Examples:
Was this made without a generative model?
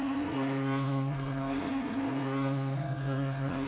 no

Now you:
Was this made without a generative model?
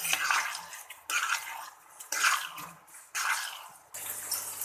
yes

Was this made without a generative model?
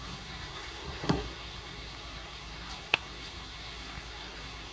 no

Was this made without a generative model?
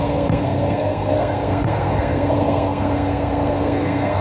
no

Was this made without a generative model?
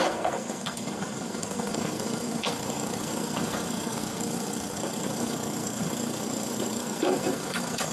no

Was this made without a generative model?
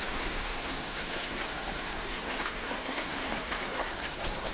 no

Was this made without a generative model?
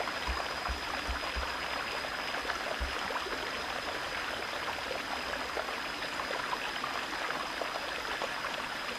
yes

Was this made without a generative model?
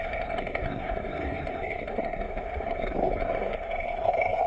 no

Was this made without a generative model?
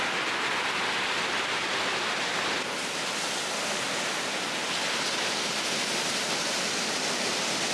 yes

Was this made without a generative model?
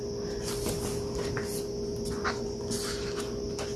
yes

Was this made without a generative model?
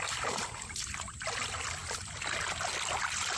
yes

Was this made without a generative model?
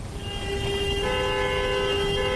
yes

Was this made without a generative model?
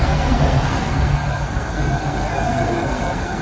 no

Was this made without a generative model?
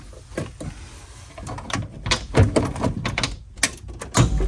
yes